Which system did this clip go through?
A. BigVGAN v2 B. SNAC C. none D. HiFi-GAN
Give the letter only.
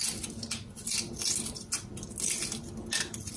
C